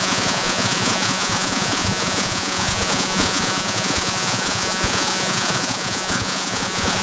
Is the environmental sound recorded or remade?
remade